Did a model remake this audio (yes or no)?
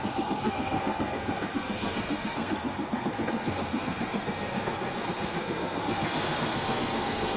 yes